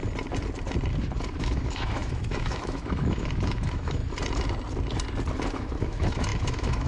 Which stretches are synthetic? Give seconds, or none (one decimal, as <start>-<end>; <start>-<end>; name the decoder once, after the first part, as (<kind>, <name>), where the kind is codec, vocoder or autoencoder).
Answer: 1.4-4.0 (autoencoder, DAC-VAE); 5.5-6.9